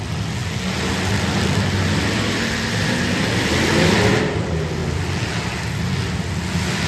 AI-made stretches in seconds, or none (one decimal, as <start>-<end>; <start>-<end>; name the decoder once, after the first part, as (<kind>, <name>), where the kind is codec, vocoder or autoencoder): none